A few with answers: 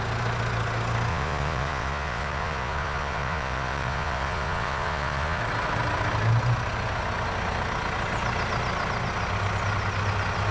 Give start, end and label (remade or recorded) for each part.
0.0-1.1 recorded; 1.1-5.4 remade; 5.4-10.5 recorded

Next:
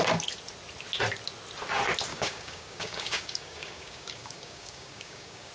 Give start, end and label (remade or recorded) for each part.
0.0-2.1 recorded; 2.1-5.5 remade

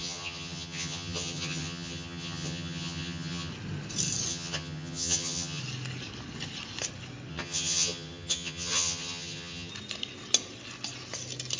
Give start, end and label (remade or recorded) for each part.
0.0-3.5 remade; 3.5-4.3 recorded; 4.3-5.6 remade; 5.6-7.3 recorded; 7.3-9.7 remade; 9.7-11.6 recorded

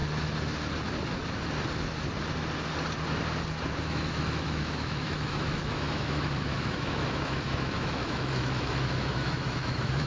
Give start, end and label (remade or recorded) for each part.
0.0-3.8 recorded; 3.8-10.1 remade

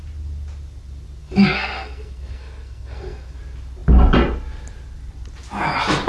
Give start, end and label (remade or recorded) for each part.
0.0-1.2 recorded; 1.2-3.4 remade; 3.4-6.1 recorded

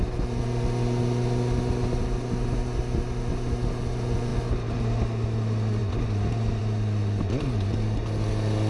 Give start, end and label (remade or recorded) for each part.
0.0-8.7 recorded